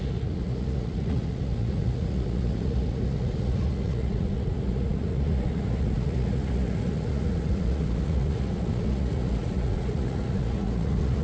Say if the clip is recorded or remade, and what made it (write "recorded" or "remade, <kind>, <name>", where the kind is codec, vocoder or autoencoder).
remade, vocoder, Vocos